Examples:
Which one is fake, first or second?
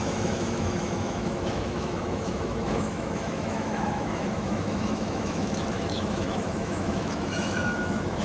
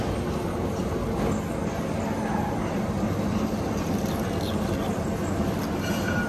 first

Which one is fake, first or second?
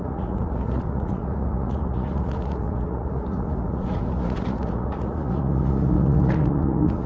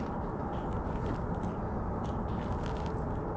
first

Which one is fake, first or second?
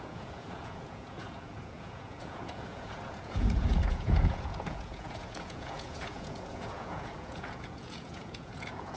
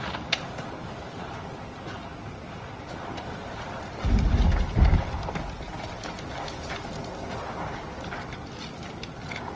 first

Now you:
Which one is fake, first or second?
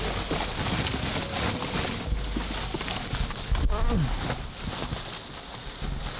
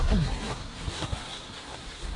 second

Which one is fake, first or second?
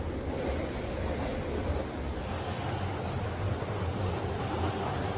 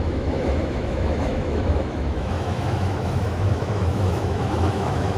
second